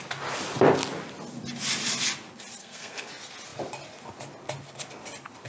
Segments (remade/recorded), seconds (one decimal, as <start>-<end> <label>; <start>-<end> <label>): 0.0-2.6 recorded; 2.6-3.1 remade; 3.1-5.5 recorded